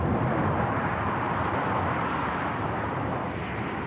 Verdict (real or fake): real